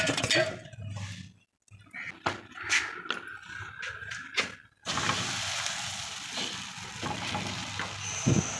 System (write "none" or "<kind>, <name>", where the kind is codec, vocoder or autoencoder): none